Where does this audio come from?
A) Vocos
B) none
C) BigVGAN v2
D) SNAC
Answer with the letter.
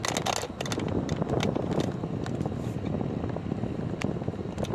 B